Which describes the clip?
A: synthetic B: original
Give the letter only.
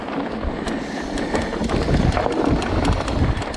B